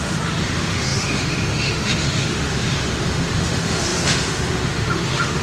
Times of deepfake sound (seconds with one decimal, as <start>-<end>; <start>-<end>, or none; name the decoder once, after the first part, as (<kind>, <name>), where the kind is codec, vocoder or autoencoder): 0.0-5.4 (autoencoder, DAC-VAE)